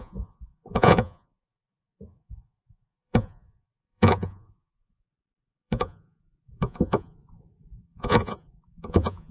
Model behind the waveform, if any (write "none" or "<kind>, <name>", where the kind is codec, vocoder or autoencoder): vocoder, Vocos